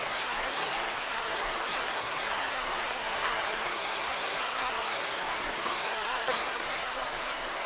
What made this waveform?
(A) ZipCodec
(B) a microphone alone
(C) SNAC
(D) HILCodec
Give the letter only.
C